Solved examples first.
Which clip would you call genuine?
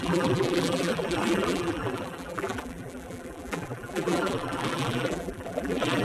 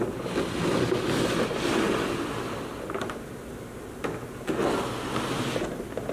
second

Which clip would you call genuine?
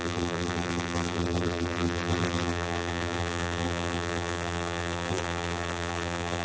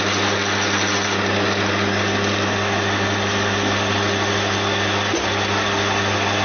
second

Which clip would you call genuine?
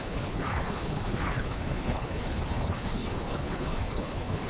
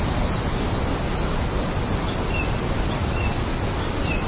second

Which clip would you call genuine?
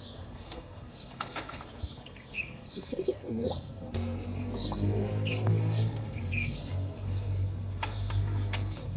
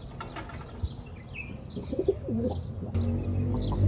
second